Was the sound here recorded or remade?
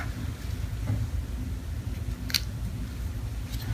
recorded